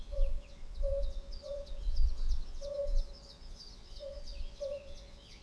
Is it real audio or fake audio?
fake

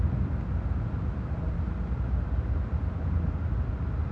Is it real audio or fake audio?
real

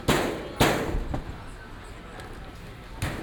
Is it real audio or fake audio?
real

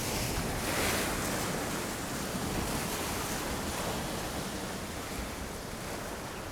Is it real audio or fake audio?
real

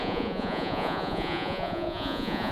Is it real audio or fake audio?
fake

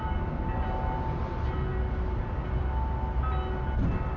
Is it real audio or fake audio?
real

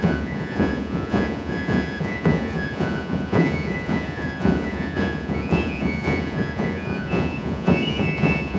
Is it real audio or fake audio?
fake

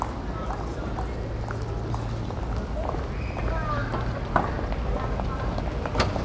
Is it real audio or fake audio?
real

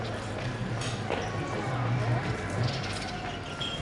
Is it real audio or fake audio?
real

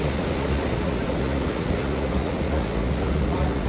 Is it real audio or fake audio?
fake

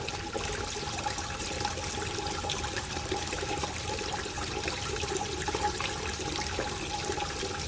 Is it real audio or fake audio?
real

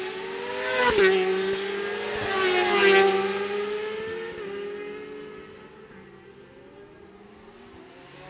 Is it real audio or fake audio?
real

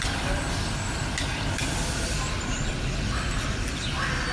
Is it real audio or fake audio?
real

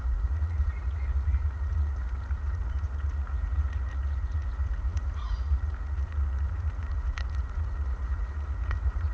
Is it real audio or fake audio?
fake